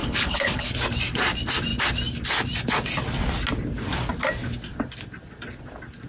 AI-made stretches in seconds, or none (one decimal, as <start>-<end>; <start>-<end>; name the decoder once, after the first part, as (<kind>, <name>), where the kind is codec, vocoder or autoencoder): 0.0-0.7 (codec, HILCodec)